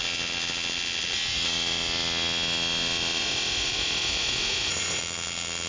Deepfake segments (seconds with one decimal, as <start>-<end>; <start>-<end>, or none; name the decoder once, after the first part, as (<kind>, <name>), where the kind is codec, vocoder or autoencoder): 3.2-5.0 (vocoder, Vocos)